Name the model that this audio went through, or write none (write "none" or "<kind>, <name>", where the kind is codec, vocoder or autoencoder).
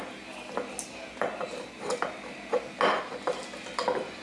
none